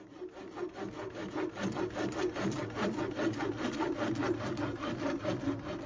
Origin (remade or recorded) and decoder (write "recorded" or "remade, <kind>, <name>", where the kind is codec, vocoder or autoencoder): recorded